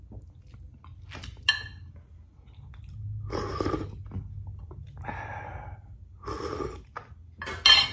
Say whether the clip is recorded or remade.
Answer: recorded